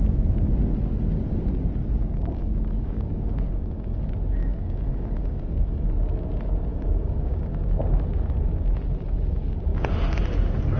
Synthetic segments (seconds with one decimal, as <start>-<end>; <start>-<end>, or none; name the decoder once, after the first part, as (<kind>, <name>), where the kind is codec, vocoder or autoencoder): 1.8-4.0 (codec, DAC); 4.4-5.8; 6.7-7.4